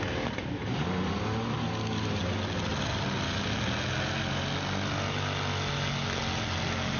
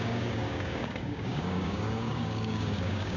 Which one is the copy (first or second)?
second